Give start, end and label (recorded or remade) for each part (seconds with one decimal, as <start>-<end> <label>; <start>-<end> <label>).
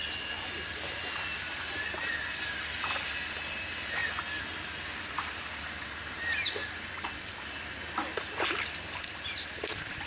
0.0-10.1 recorded